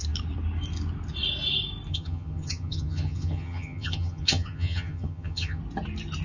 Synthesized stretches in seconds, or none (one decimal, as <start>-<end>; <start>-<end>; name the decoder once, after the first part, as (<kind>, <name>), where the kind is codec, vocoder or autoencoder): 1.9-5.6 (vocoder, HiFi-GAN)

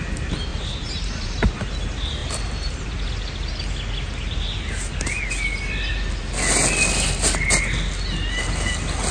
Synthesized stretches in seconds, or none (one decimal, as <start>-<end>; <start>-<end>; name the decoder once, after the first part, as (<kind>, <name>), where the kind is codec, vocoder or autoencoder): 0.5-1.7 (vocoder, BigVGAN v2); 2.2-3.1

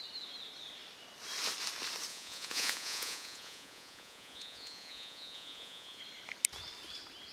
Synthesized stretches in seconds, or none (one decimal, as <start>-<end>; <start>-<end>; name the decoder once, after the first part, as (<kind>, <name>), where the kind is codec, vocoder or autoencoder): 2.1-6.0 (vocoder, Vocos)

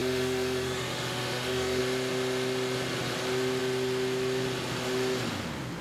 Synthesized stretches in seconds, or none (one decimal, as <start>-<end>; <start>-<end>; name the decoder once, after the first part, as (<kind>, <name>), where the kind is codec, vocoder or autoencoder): 0.0-1.8 (autoencoder, DAC-VAE)

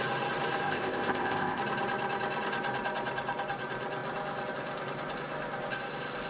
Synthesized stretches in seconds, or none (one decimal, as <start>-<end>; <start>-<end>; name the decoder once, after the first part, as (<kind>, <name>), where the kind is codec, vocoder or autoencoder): 0.6-1.6 (codec, ZipCodec)

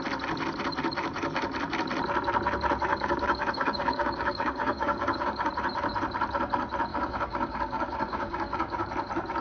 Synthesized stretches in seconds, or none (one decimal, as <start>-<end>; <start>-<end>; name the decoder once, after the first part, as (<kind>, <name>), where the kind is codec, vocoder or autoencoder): 2.9-5.5 (codec, DAC); 6.9-8.9

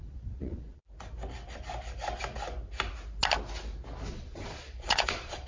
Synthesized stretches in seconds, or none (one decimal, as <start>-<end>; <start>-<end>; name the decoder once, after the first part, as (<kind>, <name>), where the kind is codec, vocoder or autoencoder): 0.0-0.8 (vocoder, Vocos); 4.1-5.5